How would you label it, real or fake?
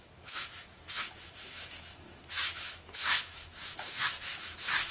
fake